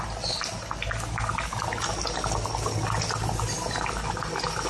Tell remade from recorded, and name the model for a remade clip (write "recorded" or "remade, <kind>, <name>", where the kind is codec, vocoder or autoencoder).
recorded